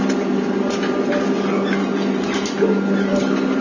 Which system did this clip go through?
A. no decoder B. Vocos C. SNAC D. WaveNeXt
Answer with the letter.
A